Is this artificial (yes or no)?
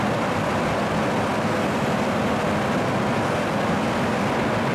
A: no